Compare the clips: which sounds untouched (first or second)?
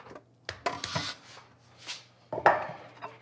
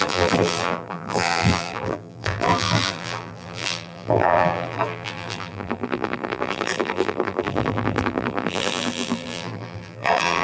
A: first